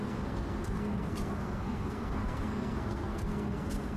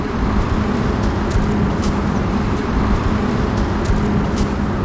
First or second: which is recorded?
second